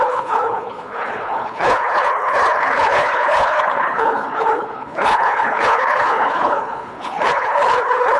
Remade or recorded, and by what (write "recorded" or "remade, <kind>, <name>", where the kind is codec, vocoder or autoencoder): remade, codec, HILCodec